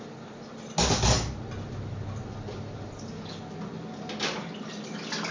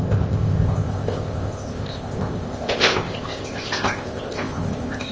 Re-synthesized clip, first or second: second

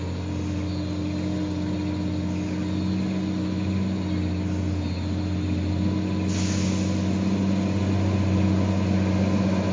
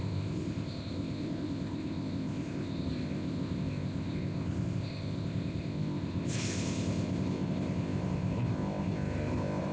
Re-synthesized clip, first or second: second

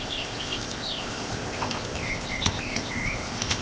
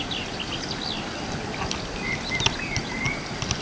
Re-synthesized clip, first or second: first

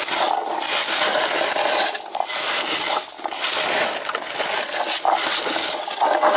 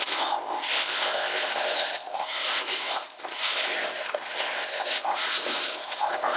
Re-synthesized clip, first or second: second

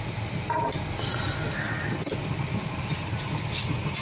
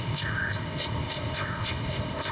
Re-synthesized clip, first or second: second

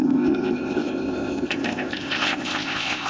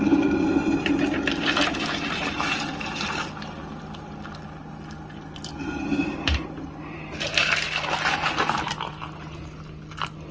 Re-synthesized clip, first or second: first